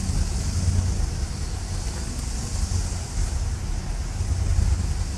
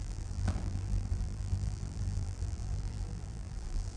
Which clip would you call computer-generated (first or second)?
second